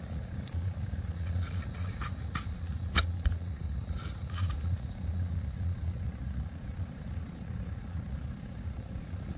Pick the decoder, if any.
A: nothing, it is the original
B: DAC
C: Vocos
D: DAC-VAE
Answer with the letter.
C